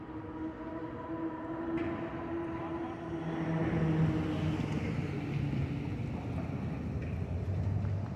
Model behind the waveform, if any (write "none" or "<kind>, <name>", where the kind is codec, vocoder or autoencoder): none